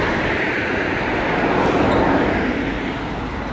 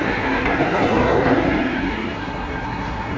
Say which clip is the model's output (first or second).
second